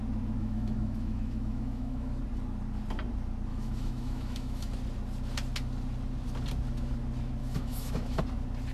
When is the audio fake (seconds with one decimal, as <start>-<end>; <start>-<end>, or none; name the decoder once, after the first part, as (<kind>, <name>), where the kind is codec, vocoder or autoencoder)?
0.4-2.2 (autoencoder, DAC-VAE); 3.5-4.7; 7.4-8.2

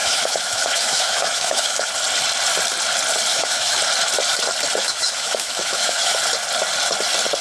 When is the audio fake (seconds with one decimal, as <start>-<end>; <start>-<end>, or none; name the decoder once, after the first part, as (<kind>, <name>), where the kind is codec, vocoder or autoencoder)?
0.0-1.9 (autoencoder, DAC-VAE); 3.3-3.8; 4.8-6.2